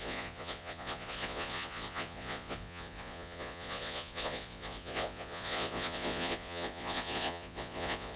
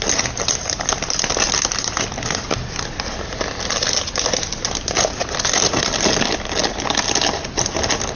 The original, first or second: second